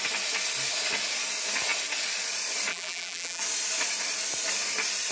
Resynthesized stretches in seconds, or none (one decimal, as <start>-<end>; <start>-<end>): 2.7-3.4